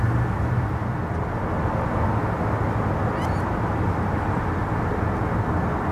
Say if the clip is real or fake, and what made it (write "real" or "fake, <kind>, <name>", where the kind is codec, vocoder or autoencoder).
real